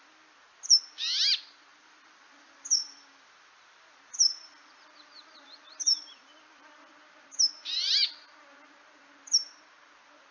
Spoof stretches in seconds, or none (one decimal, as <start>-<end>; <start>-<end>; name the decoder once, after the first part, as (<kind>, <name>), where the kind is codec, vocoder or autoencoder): 1.7-6.9 (vocoder, BigVGAN v2)